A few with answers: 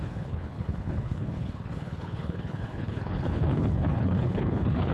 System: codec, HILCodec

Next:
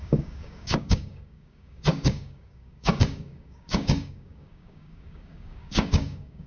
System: codec, DAC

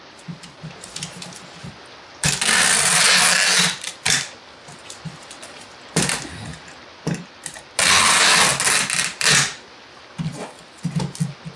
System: none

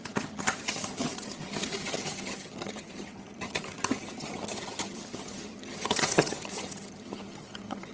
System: vocoder, HiFi-GAN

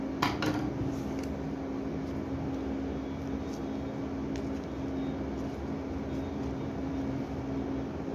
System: none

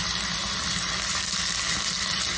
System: none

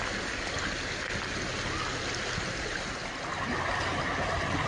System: none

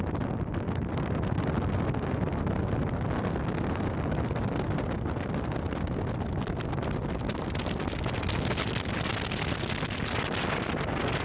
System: none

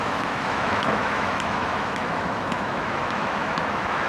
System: autoencoder, DAC-VAE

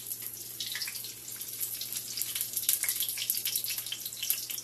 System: none